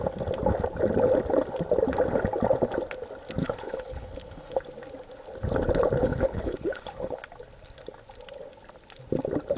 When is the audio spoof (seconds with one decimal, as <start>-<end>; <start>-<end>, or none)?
3.4-4.6; 6.0-7.2